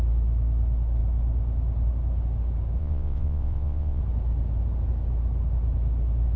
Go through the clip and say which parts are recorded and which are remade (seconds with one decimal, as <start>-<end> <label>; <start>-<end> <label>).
0.0-2.8 recorded; 2.8-4.0 remade; 4.0-6.4 recorded